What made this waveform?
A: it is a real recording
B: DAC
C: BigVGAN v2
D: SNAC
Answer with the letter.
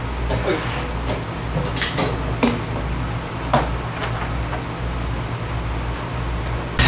A